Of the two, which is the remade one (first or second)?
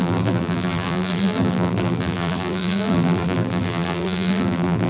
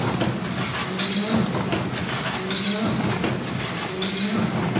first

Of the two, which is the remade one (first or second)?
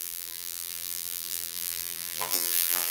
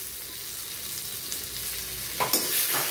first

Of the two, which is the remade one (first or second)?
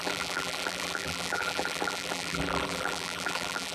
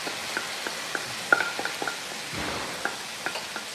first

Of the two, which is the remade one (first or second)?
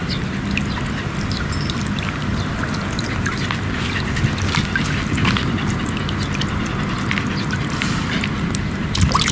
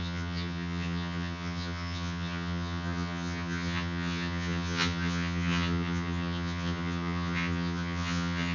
second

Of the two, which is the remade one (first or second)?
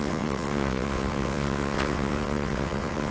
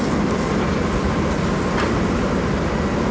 first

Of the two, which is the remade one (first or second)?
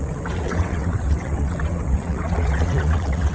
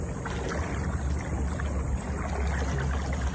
first